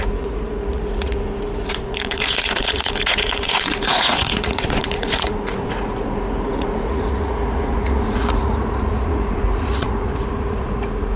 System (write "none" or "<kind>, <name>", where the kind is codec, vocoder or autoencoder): vocoder, Vocos